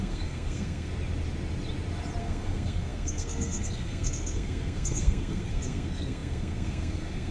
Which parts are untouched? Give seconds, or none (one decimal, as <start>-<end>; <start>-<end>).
0.9-2.2